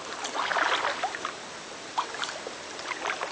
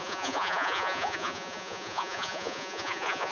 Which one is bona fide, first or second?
first